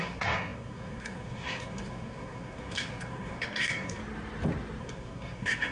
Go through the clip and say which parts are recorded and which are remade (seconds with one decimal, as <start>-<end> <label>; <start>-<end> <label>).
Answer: 0.0-4.0 remade; 4.0-4.8 recorded; 4.8-5.7 remade